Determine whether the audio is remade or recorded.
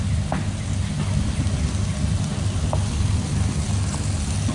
recorded